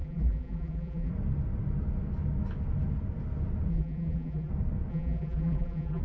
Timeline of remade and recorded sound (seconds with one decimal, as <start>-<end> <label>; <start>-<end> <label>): 0.0-1.1 remade; 1.1-3.7 recorded; 3.7-4.5 remade; 4.5-4.9 recorded; 4.9-6.0 remade